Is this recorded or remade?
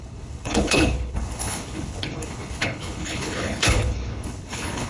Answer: remade